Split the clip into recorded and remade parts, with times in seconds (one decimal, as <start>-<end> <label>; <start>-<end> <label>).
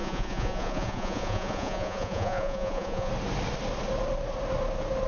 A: 0.0-3.1 remade; 3.1-5.1 recorded